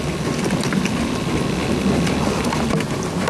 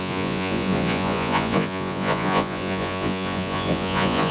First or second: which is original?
first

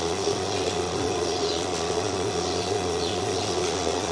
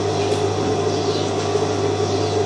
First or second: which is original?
second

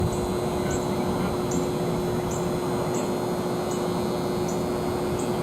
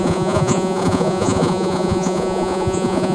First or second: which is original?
first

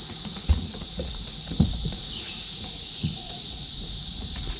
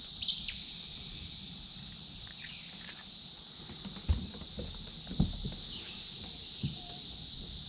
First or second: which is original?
second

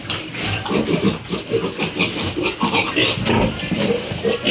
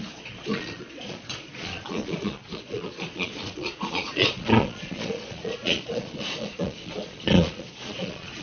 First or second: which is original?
first